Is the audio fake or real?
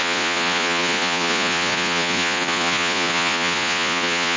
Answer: fake